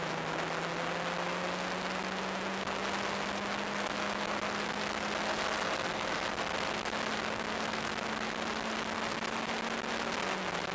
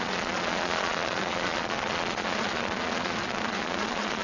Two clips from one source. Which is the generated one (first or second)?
second